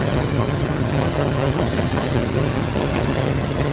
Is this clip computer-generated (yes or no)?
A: yes